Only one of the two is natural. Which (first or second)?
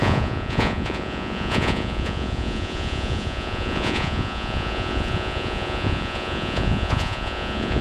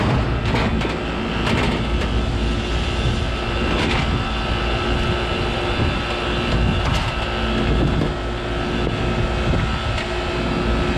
second